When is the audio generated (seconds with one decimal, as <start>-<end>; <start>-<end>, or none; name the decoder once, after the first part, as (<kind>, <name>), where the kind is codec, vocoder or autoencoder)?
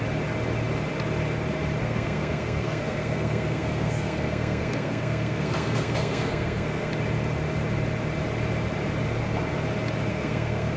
1.8-6.9 (codec, SNAC); 10.1-10.8